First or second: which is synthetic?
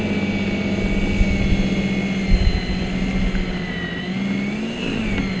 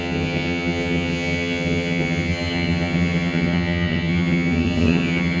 second